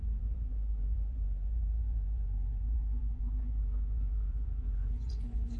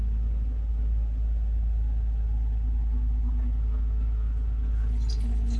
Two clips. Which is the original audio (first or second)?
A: second